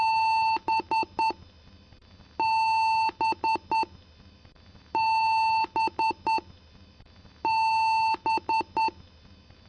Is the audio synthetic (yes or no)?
no